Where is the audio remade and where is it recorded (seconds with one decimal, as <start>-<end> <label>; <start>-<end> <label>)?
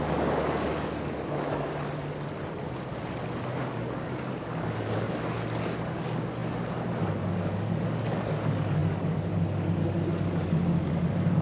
0.0-2.0 remade; 2.0-3.6 recorded; 3.6-11.4 remade